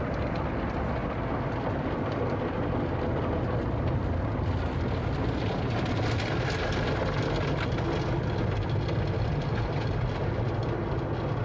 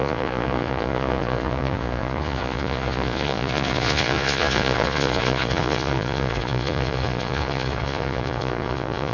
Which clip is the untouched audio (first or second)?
first